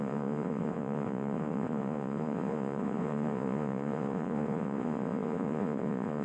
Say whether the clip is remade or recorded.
remade